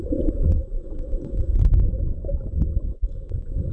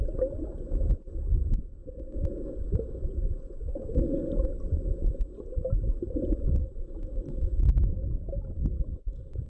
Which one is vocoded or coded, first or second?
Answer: first